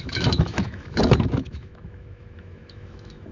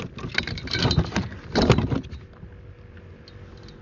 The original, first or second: second